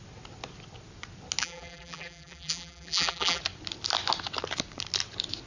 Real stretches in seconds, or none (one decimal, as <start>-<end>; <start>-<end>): 0.0-1.4; 3.4-5.5